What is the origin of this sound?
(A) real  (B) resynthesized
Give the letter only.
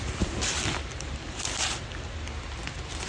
B